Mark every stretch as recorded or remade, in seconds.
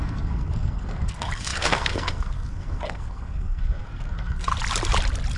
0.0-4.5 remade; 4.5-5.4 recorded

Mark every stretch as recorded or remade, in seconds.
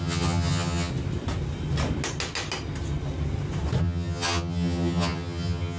0.0-0.9 remade; 0.9-3.8 recorded; 3.8-5.8 remade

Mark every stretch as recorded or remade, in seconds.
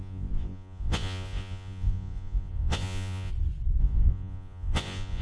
0.0-3.3 remade; 3.3-3.8 recorded; 3.8-5.2 remade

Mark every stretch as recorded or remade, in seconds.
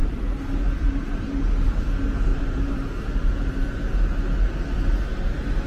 0.0-1.4 remade; 1.4-2.3 recorded; 2.3-3.8 remade; 3.8-5.7 recorded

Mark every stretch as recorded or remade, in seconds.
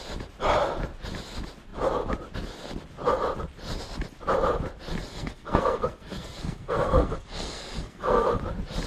0.0-5.1 recorded; 5.1-8.3 remade; 8.3-8.9 recorded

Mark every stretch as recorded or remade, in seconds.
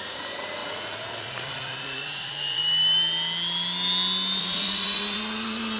0.0-2.6 remade; 2.6-4.4 recorded; 4.4-5.8 remade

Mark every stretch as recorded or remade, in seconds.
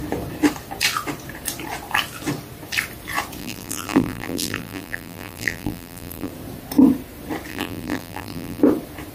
0.0-3.4 recorded; 3.4-6.3 remade; 6.3-7.5 recorded; 7.5-8.6 remade; 8.6-9.1 recorded